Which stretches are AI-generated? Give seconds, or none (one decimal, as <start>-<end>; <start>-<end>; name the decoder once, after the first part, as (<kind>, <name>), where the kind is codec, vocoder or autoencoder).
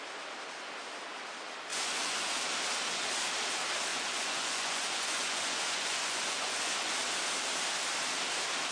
1.7-2.3 (vocoder, Vocos); 3.9-6.9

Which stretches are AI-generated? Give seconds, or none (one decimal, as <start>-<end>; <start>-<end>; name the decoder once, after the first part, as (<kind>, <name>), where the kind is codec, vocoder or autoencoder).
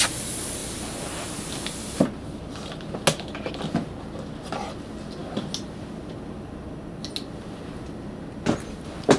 none